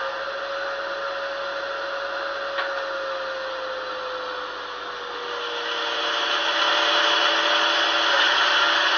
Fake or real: real